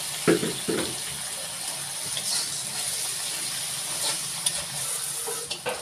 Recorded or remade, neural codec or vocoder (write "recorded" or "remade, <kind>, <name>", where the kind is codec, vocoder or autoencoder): recorded